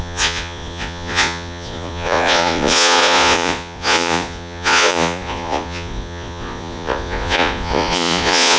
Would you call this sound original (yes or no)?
no